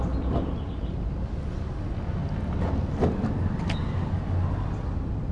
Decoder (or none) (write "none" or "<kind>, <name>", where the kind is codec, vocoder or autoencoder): none